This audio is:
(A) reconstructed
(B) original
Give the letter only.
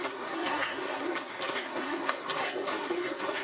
A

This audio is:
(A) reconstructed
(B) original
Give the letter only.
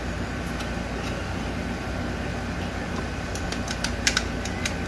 B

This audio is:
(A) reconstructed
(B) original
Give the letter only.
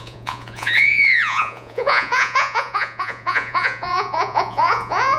A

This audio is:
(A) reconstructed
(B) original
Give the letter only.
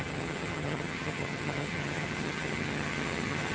A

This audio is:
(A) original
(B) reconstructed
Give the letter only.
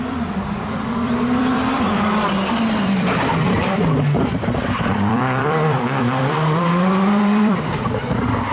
B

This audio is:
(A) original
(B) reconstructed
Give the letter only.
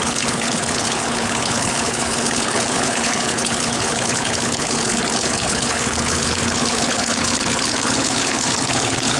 B